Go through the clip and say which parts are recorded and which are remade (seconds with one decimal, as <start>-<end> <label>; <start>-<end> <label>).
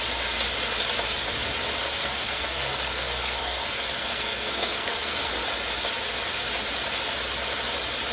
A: 0.0-1.8 recorded; 1.8-5.3 remade; 5.3-8.1 recorded